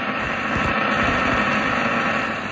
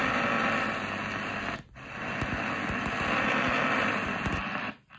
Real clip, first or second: second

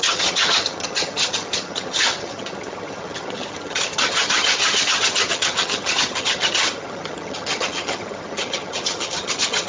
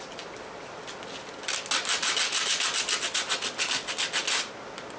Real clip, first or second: second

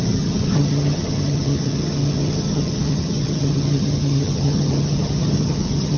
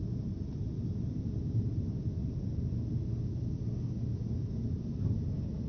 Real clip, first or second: second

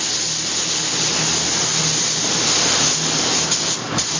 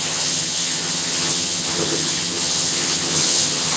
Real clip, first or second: first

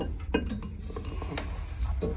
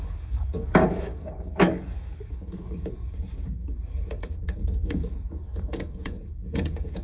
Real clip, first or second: first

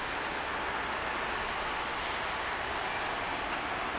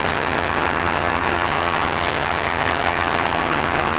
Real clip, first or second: first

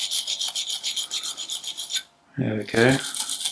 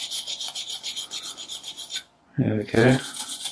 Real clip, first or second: first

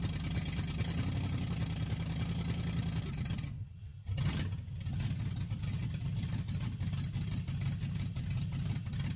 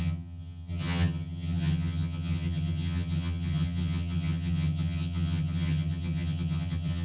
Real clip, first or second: first